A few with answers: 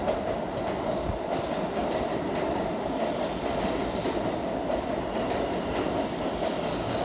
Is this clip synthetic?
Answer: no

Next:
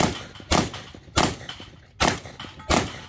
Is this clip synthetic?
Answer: no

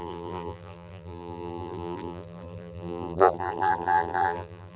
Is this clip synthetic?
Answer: yes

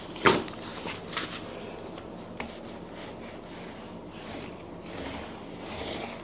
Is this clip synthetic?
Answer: no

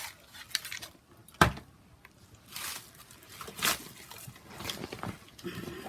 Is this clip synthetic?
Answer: no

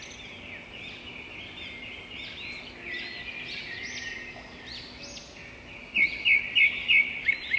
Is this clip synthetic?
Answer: no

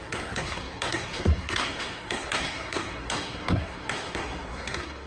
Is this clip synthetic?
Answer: yes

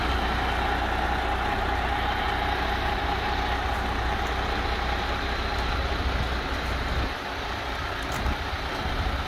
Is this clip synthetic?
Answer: no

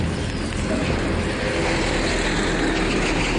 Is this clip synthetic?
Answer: no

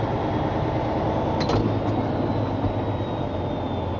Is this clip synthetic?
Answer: no